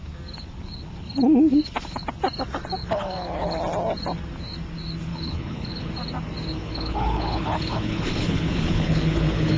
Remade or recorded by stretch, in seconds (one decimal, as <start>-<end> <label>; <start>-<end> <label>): 0.0-2.8 recorded; 2.8-3.6 remade; 3.6-5.1 recorded; 5.1-5.9 remade; 5.9-6.5 recorded; 6.5-9.6 remade